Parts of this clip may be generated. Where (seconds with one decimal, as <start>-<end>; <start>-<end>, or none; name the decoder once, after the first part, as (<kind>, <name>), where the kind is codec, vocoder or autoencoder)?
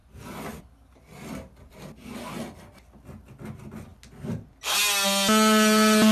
none